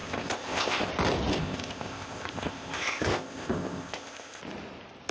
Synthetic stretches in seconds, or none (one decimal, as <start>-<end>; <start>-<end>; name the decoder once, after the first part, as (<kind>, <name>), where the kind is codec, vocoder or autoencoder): 0.0-0.9 (codec, ZipCodec); 1.3-4.4